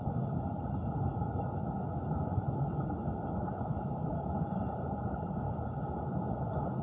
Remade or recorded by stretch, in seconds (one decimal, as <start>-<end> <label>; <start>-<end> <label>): 0.0-4.1 recorded; 4.1-5.5 remade; 5.5-6.8 recorded

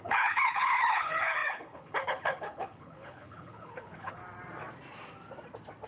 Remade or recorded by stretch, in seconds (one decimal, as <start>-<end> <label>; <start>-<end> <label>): 0.0-4.2 remade; 4.2-5.9 recorded

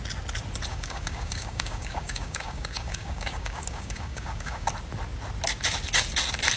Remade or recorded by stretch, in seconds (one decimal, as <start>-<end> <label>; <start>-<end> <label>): 0.0-0.7 recorded; 0.7-4.7 remade; 4.7-6.6 recorded

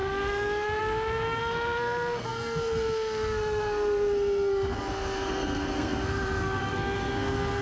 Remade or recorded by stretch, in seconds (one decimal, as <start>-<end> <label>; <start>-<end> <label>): 0.0-7.6 remade

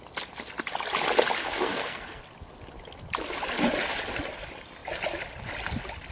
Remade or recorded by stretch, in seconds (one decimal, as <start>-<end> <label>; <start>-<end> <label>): 0.0-1.4 recorded; 1.4-2.2 remade; 2.2-6.1 recorded

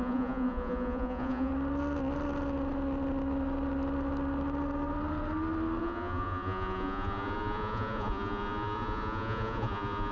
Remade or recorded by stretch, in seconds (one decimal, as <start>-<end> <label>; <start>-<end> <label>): 0.0-1.5 remade; 1.5-5.8 recorded; 5.8-10.1 remade

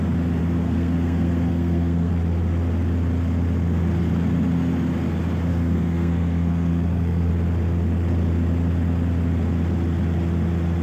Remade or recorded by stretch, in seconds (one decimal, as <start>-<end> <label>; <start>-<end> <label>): 0.0-0.4 recorded; 0.4-2.1 remade; 2.1-5.5 recorded; 5.5-7.3 remade; 7.3-10.8 recorded